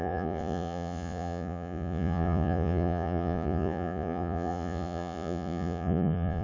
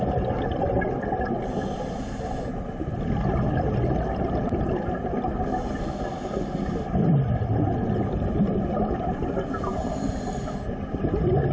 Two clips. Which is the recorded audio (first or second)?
second